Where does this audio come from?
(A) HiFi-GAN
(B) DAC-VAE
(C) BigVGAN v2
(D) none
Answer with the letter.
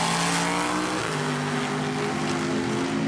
D